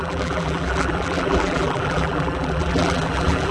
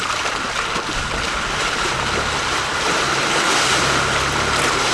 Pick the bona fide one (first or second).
second